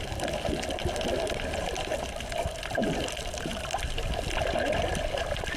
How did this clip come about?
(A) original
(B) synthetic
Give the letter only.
A